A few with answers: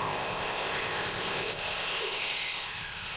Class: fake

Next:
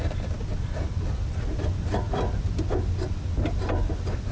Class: real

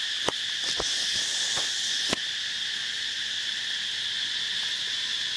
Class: real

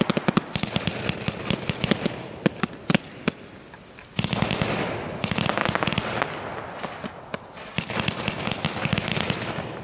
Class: real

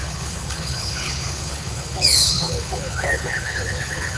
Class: fake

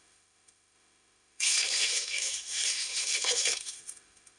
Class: fake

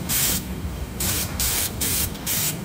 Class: fake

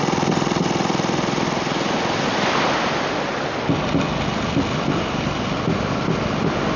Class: real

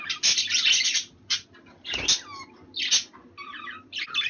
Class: real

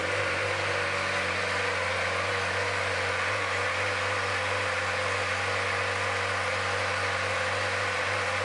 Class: real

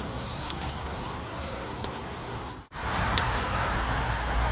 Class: fake